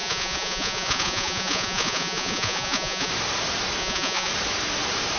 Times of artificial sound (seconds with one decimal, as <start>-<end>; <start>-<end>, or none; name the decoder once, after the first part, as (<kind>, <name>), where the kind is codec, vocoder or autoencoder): 0.0-3.1 (vocoder, Vocos); 3.8-4.3